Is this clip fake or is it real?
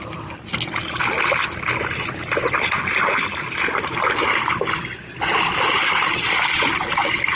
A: real